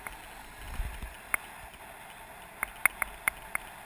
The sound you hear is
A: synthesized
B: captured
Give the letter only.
B